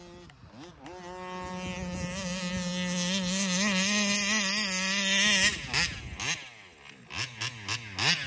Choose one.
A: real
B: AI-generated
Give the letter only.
A